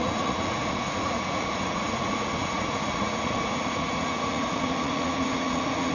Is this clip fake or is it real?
fake